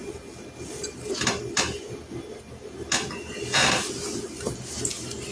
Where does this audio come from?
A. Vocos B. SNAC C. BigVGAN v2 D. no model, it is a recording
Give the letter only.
D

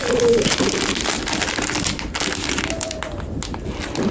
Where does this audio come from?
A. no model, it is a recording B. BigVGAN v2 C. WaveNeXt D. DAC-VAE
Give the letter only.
A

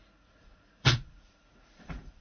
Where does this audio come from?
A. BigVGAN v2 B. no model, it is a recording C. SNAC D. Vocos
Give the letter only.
D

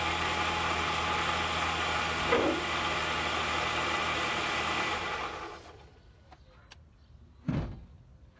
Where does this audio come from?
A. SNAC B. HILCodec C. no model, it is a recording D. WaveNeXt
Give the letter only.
C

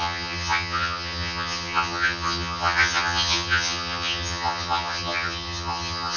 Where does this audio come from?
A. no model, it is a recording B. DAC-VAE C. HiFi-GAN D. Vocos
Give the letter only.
C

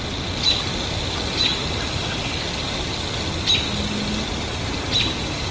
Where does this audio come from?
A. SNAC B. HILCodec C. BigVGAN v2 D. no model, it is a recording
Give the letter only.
D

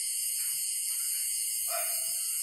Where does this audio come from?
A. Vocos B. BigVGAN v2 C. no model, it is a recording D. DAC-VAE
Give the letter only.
A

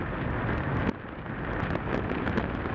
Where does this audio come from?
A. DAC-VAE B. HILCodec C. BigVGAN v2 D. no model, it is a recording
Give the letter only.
D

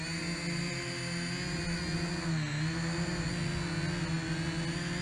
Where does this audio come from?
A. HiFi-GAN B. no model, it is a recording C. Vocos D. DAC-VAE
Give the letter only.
B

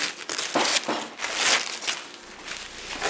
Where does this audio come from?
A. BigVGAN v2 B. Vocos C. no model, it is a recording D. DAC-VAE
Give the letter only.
C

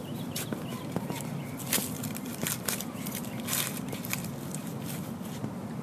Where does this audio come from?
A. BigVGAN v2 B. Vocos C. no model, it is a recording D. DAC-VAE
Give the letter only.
A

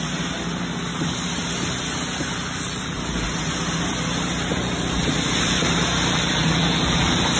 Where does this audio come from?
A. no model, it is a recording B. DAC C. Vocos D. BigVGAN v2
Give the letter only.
A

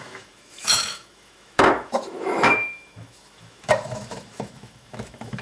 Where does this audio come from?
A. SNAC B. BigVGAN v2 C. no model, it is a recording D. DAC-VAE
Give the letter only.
D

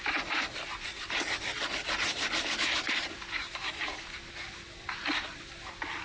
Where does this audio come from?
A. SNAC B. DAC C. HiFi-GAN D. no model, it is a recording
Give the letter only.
D